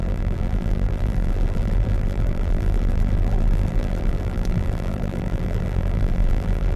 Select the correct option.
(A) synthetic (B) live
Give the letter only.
A